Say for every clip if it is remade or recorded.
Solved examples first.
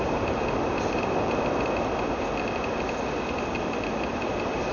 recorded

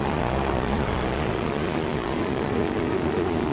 remade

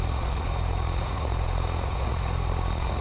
remade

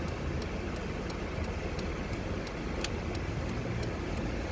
recorded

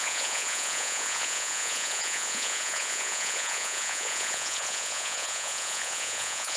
remade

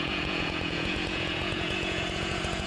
remade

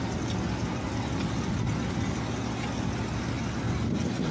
recorded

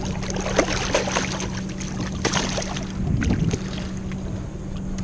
recorded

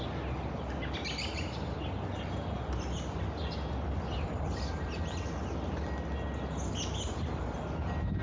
recorded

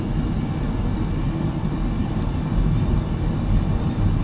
recorded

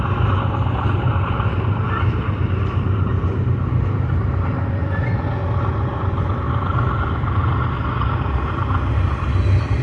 recorded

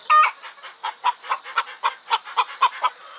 recorded